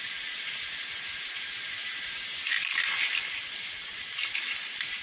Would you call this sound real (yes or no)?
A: yes